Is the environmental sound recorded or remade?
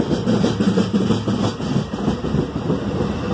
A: recorded